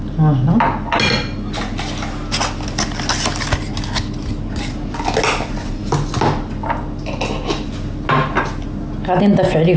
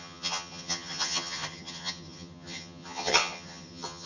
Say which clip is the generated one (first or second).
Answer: second